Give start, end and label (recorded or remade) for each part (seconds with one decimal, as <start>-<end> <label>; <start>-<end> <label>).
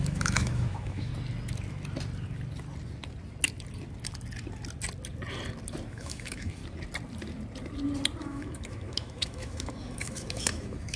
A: 0.0-1.1 remade; 1.1-5.9 recorded; 5.9-6.6 remade; 6.6-8.2 recorded; 8.2-11.0 remade